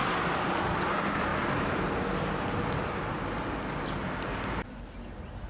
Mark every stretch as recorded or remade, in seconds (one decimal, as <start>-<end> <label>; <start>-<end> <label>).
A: 0.0-5.5 recorded

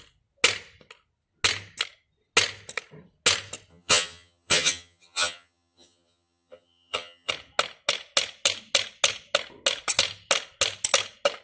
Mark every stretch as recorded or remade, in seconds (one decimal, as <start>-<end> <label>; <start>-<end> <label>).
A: 0.0-3.7 recorded; 3.7-7.3 remade; 7.3-11.4 recorded

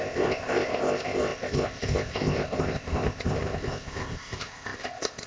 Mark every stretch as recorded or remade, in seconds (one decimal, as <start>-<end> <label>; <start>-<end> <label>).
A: 0.0-5.3 remade

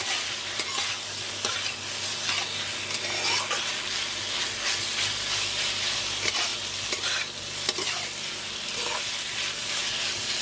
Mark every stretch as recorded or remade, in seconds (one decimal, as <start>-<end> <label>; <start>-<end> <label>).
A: 0.0-10.4 recorded

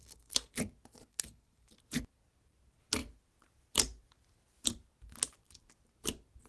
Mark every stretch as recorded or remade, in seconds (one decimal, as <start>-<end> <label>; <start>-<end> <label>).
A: 0.0-0.5 remade; 0.5-1.1 recorded; 1.1-1.7 remade; 1.7-6.5 recorded